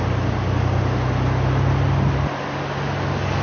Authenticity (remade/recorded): recorded